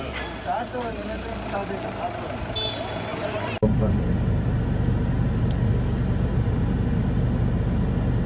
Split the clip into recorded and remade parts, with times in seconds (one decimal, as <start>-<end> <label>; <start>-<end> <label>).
0.0-3.1 recorded; 3.1-4.6 remade; 4.6-6.3 recorded; 6.3-7.0 remade; 7.0-8.3 recorded